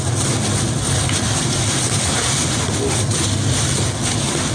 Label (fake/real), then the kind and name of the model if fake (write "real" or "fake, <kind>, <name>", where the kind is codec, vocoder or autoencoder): real